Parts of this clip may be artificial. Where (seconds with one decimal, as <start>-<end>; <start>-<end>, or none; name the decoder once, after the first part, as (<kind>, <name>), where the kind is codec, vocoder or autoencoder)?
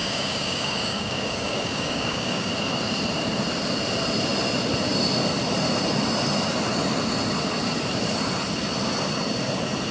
0.0-2.5 (codec, DAC)